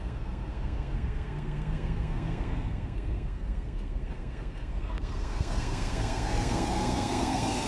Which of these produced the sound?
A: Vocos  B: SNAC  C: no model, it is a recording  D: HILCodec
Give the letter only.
B